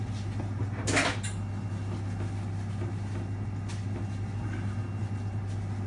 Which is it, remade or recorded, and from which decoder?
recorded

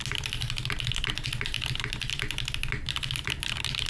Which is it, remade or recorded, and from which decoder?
recorded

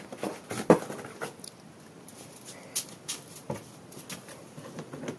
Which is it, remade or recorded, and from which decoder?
recorded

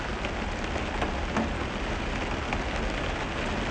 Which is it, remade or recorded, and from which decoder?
recorded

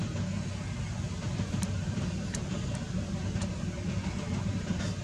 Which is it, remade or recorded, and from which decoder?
recorded